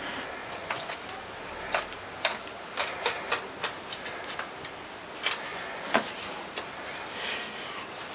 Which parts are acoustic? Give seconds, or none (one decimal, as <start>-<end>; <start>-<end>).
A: 0.0-0.4; 0.9-5.5; 6.1-8.1

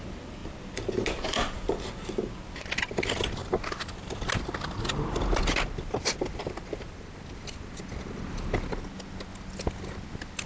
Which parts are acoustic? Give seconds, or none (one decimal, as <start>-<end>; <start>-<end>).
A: 0.0-10.5

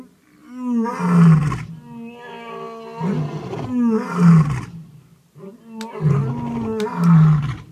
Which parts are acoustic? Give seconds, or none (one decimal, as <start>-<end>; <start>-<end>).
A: 0.0-7.7

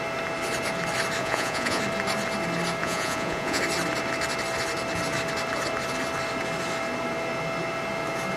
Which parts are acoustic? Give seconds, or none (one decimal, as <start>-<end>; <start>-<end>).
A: 0.0-1.2; 1.8-2.8; 3.6-8.4

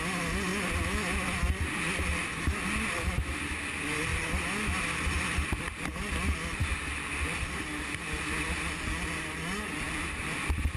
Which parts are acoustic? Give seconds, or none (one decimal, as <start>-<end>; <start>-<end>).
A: 0.0-10.8

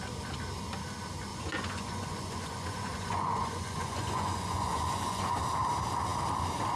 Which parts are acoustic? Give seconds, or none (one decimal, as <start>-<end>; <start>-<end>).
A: 0.0-1.3; 5.4-6.8